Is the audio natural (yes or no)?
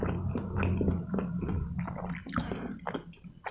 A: yes